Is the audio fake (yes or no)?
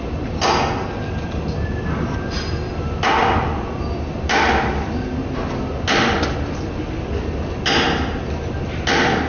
no